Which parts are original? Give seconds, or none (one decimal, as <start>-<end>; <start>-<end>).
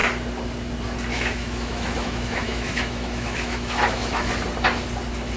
0.0-1.1; 4.3-5.4